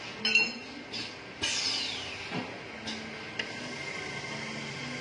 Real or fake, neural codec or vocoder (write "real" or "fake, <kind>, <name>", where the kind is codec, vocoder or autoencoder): real